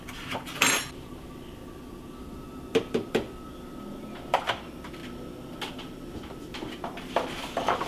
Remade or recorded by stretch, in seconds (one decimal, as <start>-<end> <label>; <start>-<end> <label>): 0.0-5.0 remade; 5.0-5.7 recorded; 5.7-7.9 remade